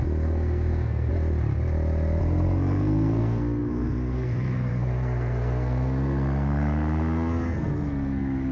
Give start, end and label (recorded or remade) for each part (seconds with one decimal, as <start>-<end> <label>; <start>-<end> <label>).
0.0-1.1 remade; 1.1-2.2 recorded; 2.2-8.5 remade